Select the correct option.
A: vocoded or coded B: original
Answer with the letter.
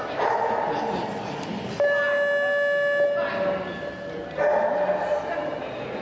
B